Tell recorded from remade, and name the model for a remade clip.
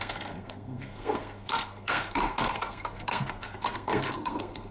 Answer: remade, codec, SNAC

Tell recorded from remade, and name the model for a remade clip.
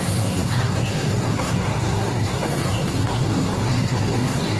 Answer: remade, codec, SNAC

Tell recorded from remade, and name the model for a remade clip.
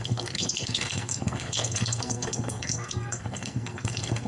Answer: remade, codec, SNAC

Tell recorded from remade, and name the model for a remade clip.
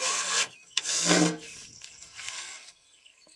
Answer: remade, codec, SNAC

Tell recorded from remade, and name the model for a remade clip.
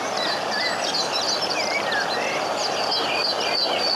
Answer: recorded